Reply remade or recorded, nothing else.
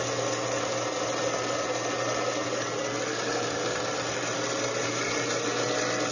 recorded